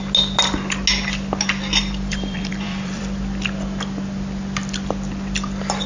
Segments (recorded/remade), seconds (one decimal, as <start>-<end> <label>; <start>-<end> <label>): 0.0-1.8 recorded; 1.8-3.0 remade; 3.0-5.9 recorded